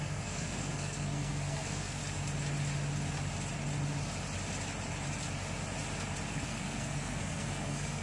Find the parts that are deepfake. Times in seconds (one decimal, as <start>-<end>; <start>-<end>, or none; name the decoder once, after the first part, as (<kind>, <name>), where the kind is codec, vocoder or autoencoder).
0.0-2.0 (codec, SNAC); 6.3-8.0